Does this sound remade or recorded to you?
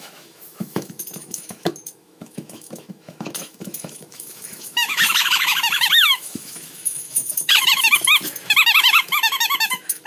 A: remade